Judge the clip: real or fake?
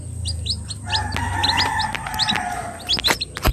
real